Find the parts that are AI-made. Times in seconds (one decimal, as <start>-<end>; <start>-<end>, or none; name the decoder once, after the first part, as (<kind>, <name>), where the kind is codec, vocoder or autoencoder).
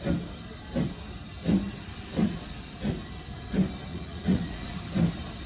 3.9-4.8 (vocoder, Vocos)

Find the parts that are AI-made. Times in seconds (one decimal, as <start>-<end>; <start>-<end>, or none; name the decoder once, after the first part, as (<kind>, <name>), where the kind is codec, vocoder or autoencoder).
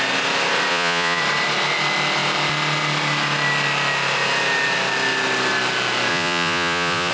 0.7-1.2 (vocoder, Vocos); 6.1-7.1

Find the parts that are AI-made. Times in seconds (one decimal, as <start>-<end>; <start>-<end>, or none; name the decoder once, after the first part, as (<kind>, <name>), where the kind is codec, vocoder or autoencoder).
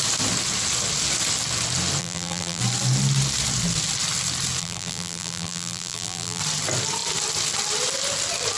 2.0-2.6 (vocoder, BigVGAN v2); 4.6-6.4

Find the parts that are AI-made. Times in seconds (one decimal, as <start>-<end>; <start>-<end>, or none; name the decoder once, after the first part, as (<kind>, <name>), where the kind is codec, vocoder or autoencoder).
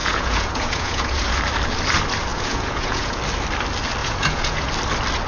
0.0-1.4 (vocoder, Vocos); 2.3-3.2; 4.0-4.7